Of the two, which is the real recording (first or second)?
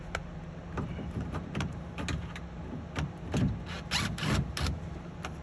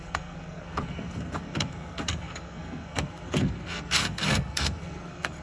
first